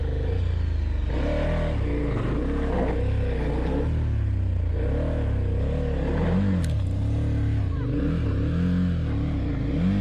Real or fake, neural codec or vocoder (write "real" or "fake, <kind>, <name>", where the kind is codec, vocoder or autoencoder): real